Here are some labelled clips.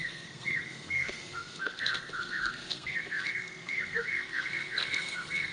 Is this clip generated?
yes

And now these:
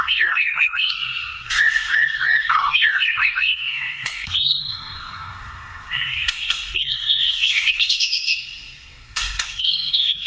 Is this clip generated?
yes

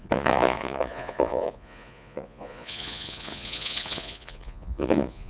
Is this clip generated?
yes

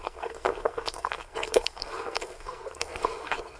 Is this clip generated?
yes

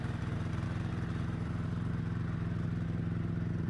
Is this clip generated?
yes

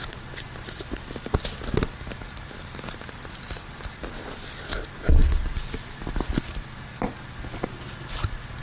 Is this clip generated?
no